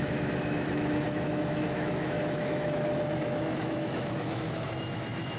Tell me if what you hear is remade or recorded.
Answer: remade